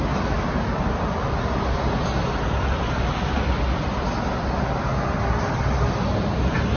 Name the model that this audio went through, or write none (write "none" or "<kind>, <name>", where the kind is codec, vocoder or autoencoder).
none